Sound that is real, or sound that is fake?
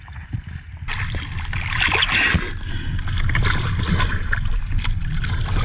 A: real